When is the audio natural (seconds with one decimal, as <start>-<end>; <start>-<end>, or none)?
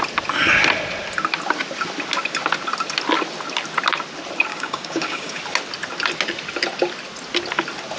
0.0-4.5; 5.4-8.0